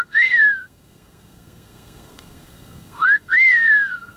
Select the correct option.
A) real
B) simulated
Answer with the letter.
B